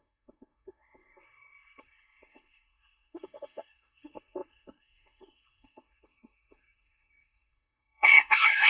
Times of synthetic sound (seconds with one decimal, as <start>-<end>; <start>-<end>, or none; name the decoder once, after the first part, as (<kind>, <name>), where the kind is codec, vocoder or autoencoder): 0.0-8.7 (codec, SNAC)